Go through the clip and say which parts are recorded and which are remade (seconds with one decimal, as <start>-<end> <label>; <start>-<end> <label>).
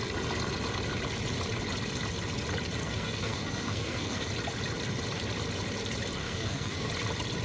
0.0-2.8 recorded; 2.8-4.3 remade; 4.3-6.2 recorded; 6.2-6.9 remade; 6.9-7.4 recorded